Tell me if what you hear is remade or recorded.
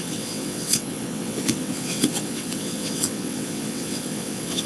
remade